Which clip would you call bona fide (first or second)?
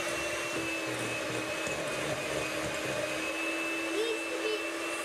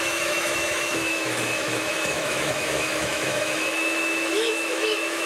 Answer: first